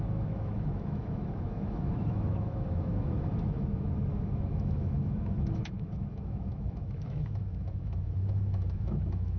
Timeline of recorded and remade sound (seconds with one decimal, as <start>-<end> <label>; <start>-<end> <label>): 0.0-9.4 remade